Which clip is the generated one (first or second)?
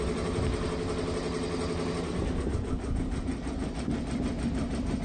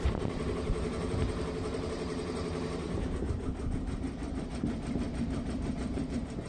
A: second